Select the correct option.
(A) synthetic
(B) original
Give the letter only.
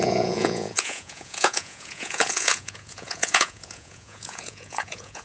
A